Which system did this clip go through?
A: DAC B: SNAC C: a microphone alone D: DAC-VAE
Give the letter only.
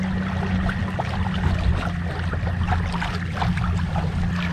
C